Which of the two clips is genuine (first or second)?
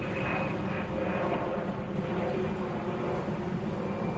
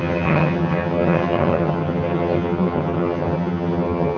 first